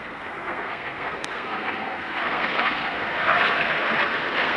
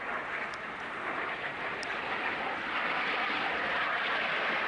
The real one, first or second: second